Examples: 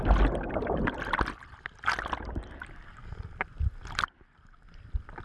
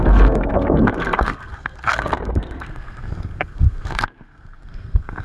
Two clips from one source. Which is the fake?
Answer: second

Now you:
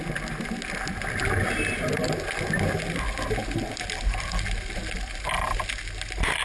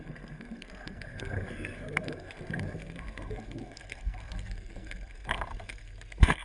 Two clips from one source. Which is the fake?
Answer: second